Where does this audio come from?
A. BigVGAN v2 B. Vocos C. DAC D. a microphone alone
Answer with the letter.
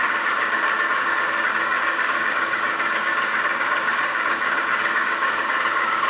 C